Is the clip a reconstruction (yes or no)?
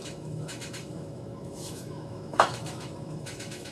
yes